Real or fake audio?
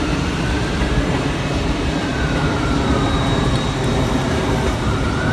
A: fake